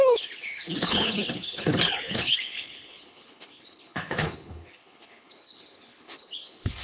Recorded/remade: remade